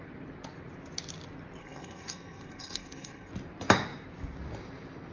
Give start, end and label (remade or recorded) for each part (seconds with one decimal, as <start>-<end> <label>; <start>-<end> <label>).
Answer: 0.0-1.6 recorded; 1.6-3.3 remade; 3.3-5.1 recorded